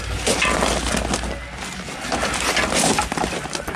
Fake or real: real